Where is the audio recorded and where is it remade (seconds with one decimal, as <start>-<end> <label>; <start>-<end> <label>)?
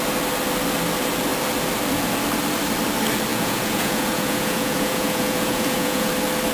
0.0-3.3 recorded; 3.3-6.1 remade; 6.1-6.5 recorded